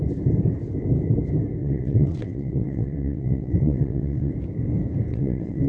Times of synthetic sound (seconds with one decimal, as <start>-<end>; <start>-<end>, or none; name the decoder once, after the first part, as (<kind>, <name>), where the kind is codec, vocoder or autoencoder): 1.6-4.3 (vocoder, WaveNeXt); 5.1-5.7